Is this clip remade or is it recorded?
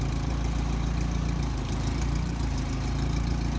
remade